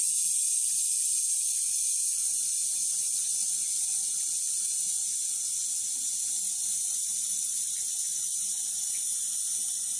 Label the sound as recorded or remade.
recorded